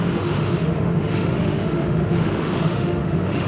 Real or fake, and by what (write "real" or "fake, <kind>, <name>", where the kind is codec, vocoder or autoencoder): fake, autoencoder, DAC-VAE